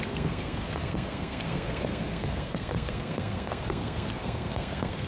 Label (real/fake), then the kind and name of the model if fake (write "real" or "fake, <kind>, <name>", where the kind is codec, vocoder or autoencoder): fake, codec, SNAC